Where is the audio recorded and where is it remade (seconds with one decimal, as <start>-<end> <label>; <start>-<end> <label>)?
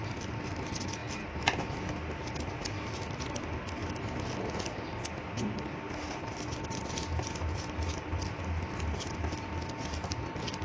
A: 0.0-10.6 recorded